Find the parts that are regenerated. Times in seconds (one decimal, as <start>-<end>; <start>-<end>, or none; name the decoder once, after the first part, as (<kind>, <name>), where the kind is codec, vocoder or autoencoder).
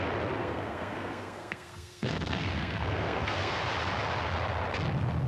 0.4-3.6 (codec, SNAC)